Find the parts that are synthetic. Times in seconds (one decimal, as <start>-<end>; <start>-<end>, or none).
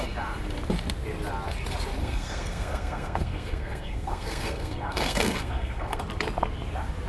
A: 2.0-6.0